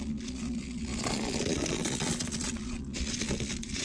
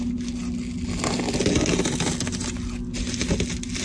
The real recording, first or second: second